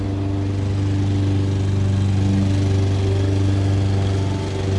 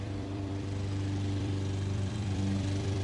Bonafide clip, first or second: first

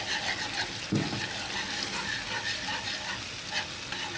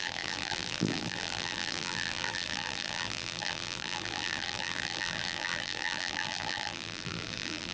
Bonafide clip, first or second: first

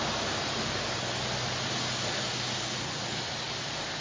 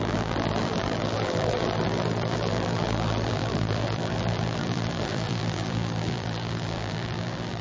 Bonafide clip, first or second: first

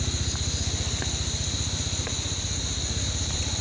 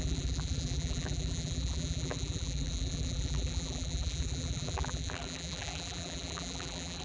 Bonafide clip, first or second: first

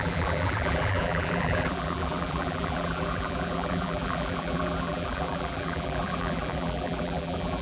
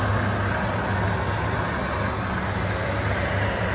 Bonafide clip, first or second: second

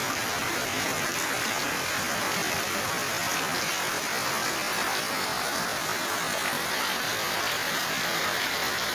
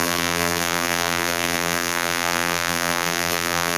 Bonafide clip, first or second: first